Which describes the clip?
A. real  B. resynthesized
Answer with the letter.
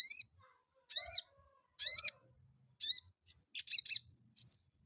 A